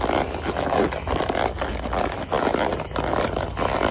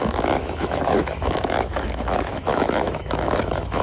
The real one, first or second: first